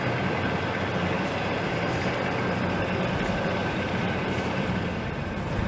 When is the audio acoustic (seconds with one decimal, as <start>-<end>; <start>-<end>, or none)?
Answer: 0.0-1.4; 2.1-3.6